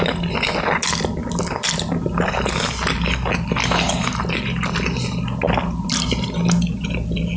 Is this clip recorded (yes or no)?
yes